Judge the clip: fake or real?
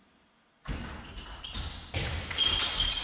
real